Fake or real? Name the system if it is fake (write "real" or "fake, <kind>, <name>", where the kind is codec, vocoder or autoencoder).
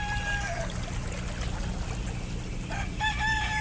real